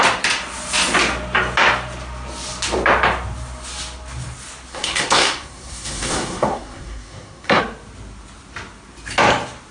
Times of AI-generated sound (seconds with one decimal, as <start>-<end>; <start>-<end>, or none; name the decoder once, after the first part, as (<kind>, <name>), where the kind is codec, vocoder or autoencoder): 4.7-7.6 (codec, SNAC)